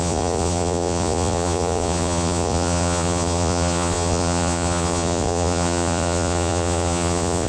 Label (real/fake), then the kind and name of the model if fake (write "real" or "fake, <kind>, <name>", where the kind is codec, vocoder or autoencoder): fake, vocoder, Vocos